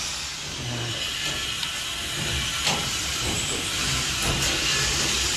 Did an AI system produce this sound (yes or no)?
no